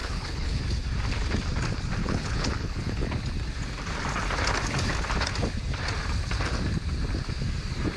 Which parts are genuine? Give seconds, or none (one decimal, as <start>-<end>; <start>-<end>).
0.6-2.0; 3.1-8.0